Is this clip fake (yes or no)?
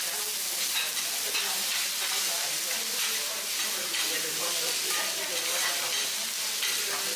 no